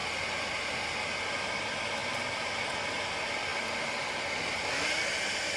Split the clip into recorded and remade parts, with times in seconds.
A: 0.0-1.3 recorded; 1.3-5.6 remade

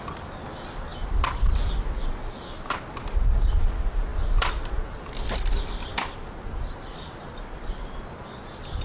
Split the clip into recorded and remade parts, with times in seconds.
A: 0.0-8.8 recorded

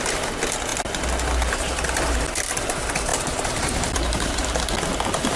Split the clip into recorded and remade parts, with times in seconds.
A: 0.0-3.1 recorded; 3.1-4.6 remade; 4.6-5.4 recorded

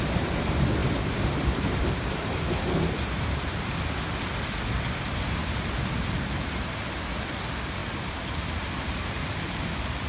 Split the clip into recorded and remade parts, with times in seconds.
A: 0.0-0.8 recorded; 0.8-3.6 remade; 3.6-5.4 recorded; 5.4-7.0 remade; 7.0-7.8 recorded; 7.8-9.1 remade; 9.1-10.1 recorded

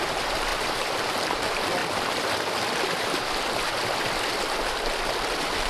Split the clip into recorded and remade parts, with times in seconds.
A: 0.0-1.8 remade; 1.8-5.2 recorded; 5.2-5.7 remade

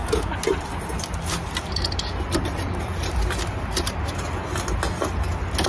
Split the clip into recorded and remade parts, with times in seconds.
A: 0.0-5.7 recorded